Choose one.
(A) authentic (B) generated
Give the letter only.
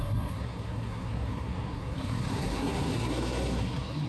B